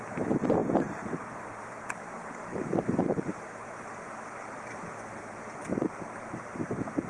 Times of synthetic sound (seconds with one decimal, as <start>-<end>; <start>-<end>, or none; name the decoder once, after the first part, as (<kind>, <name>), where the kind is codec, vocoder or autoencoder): 0.0-7.1 (vocoder, BigVGAN v2)